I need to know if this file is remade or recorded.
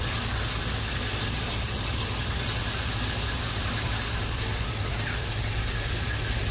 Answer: recorded